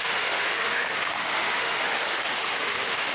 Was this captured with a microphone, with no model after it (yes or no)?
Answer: no